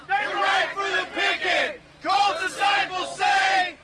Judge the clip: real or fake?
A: fake